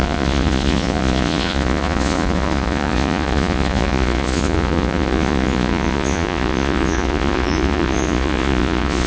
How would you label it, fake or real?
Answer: fake